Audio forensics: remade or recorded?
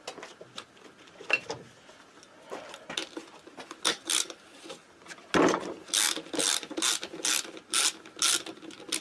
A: recorded